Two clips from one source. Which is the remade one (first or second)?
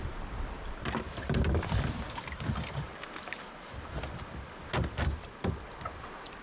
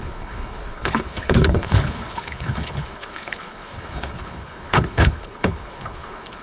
second